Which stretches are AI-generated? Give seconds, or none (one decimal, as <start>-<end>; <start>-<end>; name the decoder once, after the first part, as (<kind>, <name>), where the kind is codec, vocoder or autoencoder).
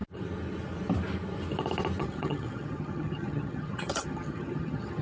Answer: 2.0-5.0 (vocoder, HiFi-GAN)